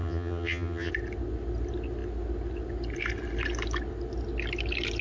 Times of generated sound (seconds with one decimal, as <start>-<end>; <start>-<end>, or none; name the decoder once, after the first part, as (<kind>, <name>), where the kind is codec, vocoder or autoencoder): 0.0-0.9 (vocoder, HiFi-GAN)